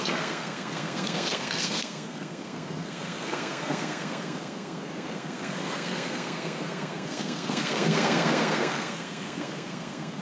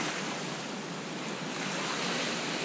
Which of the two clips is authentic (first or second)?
second